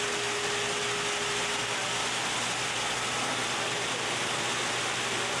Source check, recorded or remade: recorded